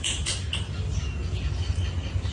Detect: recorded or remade recorded